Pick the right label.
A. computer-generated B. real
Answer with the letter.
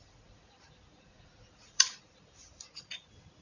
A